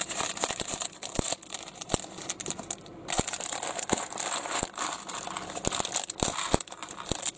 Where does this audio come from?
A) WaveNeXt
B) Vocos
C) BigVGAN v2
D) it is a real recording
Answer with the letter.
D